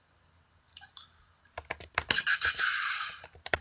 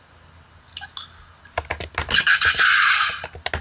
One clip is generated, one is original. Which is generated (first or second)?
first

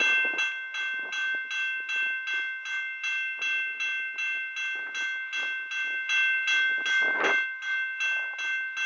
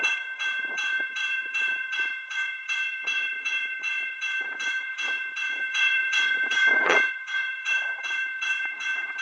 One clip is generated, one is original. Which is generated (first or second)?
second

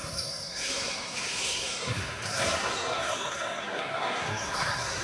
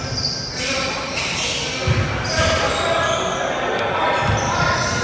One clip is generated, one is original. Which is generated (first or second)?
first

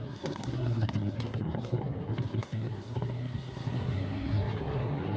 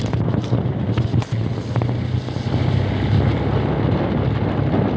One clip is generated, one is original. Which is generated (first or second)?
first